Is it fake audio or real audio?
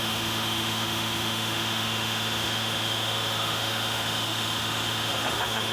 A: fake